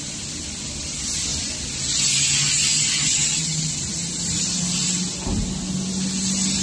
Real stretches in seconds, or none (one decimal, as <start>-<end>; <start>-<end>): 0.0-3.1; 3.8-6.6